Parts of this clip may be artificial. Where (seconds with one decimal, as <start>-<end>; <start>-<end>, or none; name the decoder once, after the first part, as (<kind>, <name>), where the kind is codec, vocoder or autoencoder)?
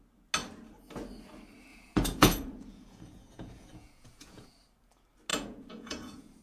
1.7-4.5 (vocoder, Vocos); 5.3-6.4